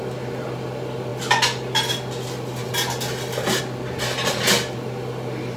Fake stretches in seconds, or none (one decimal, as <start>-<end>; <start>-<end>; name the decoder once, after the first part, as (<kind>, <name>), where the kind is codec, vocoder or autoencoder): none